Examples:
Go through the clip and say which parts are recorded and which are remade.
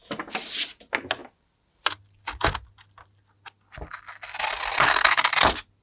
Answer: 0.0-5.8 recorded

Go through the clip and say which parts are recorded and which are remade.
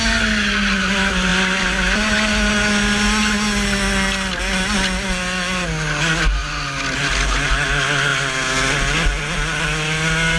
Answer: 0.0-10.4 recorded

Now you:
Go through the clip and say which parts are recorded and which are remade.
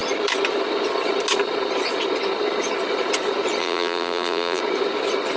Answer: 0.0-3.6 recorded; 3.6-4.6 remade; 4.6-5.4 recorded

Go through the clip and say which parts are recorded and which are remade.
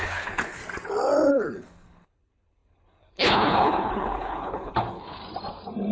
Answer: 0.0-0.6 remade; 0.6-1.3 recorded; 1.3-5.2 remade; 5.2-5.9 recorded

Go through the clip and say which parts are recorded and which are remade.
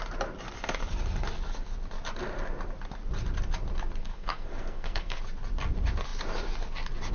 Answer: 0.0-4.0 recorded; 4.0-5.2 remade; 5.2-7.1 recorded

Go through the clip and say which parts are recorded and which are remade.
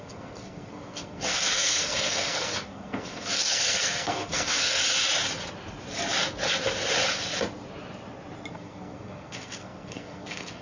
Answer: 0.0-4.8 remade; 4.8-8.5 recorded; 8.5-10.6 remade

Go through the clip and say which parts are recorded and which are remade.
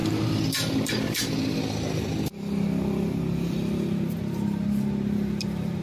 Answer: 0.0-5.8 recorded